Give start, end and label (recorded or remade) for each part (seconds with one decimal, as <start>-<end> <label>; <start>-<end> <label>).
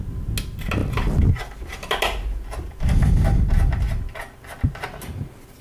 0.0-5.6 recorded